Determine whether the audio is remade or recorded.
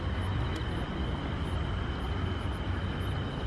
recorded